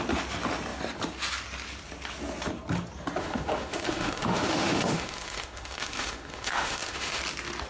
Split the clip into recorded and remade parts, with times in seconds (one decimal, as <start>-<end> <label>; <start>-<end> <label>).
0.0-3.2 recorded; 3.2-7.2 remade; 7.2-7.7 recorded

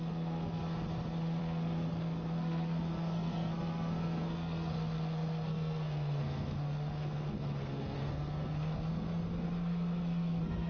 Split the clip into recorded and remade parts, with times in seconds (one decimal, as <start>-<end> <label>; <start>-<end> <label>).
0.0-0.6 remade; 0.6-1.4 recorded; 1.4-10.7 remade

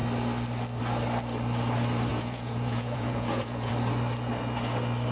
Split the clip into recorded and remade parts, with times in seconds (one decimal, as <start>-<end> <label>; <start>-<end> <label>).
0.0-2.1 recorded; 2.1-3.7 remade; 3.7-5.1 recorded

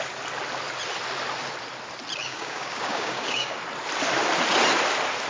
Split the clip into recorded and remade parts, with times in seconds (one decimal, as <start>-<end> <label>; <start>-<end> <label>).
0.0-2.2 recorded; 2.2-3.6 remade; 3.6-5.3 recorded

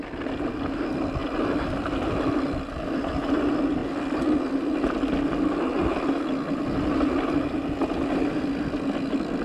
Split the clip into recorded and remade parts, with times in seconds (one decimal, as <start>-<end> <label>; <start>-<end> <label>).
0.0-9.4 recorded

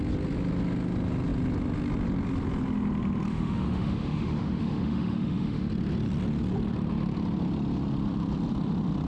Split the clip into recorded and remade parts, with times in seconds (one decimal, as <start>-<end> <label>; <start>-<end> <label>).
0.0-3.3 recorded; 3.3-5.7 remade; 5.7-9.1 recorded

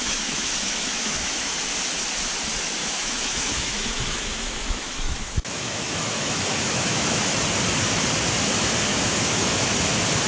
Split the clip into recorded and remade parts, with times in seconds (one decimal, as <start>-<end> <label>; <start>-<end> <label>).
0.0-1.6 remade; 1.6-2.8 recorded; 2.8-7.2 remade; 7.2-8.9 recorded; 8.9-9.7 remade; 9.7-10.3 recorded